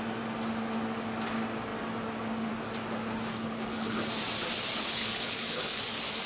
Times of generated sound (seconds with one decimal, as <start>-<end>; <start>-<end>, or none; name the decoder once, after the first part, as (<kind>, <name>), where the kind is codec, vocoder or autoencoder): 3.3-4.1 (codec, HILCodec); 5.0-5.8